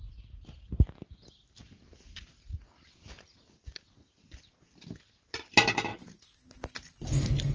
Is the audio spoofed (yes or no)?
no